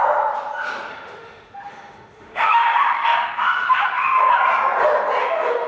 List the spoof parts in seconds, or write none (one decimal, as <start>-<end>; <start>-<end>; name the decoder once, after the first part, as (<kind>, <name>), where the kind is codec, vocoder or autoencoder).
0.9-4.3 (autoencoder, DAC-VAE); 5.2-5.7